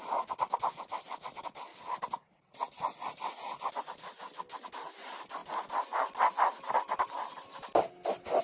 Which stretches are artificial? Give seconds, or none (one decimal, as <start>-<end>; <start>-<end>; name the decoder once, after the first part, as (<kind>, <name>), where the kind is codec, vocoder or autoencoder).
none